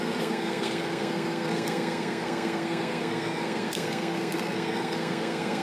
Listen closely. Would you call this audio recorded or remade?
remade